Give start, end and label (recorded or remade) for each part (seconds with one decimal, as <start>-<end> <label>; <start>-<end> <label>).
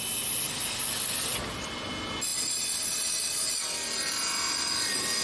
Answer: 0.0-5.2 recorded